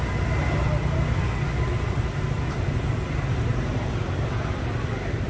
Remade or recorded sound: recorded